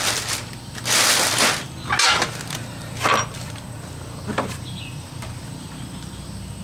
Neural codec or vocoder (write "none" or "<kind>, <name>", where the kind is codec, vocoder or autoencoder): none